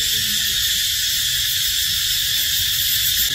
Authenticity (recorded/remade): recorded